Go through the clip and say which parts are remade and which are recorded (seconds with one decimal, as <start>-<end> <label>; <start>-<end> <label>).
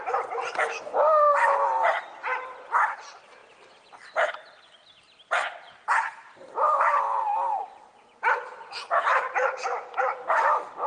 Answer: 0.0-10.9 recorded